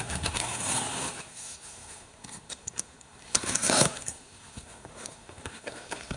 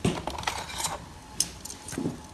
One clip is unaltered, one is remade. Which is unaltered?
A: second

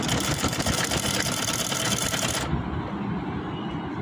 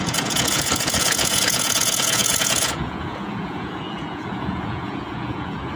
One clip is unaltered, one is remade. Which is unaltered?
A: first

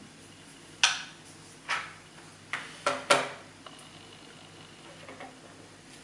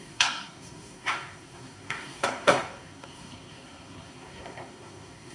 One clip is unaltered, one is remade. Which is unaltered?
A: first